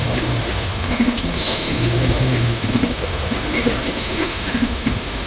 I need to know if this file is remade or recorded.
remade